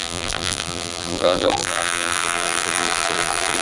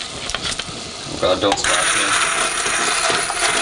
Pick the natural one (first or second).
second